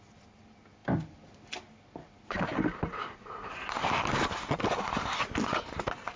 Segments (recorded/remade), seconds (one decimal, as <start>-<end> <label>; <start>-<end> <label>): 0.0-6.2 recorded